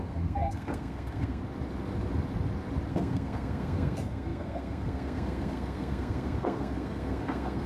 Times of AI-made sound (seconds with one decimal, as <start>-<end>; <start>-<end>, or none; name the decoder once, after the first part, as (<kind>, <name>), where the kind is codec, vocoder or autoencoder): 0.0-1.4 (codec, SNAC); 2.9-7.7